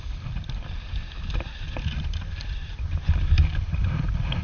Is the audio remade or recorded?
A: recorded